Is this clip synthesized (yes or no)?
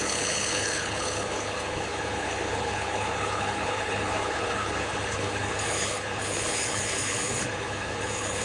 yes